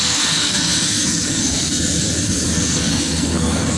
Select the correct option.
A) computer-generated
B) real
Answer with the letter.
A